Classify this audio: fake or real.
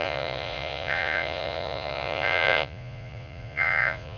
fake